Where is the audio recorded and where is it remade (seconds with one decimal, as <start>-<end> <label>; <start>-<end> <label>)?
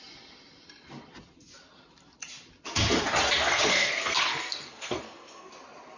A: 0.0-3.4 recorded; 3.4-5.5 remade; 5.5-6.0 recorded